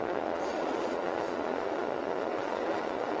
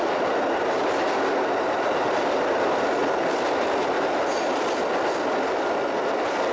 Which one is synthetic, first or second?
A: first